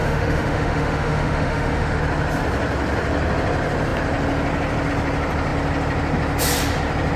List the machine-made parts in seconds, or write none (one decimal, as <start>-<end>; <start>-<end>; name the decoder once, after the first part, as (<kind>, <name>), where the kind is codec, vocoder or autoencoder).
0.0-2.0 (autoencoder, DAC-VAE)